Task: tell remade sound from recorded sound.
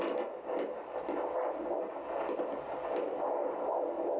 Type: recorded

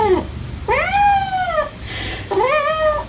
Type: remade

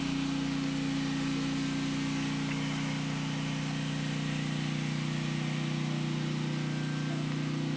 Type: recorded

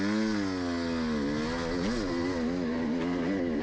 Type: recorded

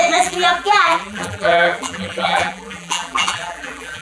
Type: remade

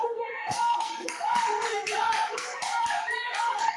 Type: remade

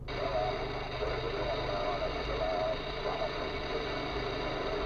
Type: recorded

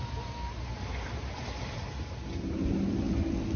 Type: recorded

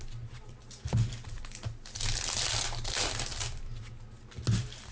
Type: recorded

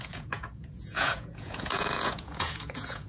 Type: remade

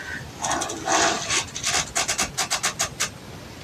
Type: recorded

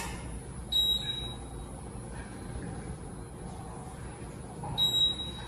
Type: recorded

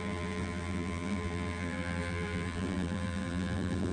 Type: remade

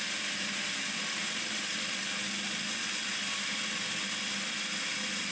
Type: recorded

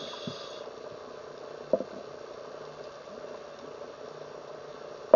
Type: recorded